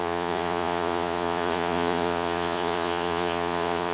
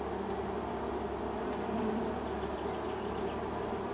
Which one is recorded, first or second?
second